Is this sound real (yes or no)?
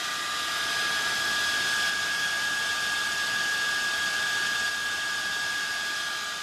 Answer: yes